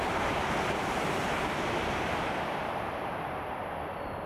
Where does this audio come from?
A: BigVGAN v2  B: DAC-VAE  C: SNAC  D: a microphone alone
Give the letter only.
D